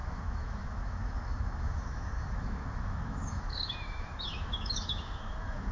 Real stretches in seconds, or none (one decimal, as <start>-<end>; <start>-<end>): none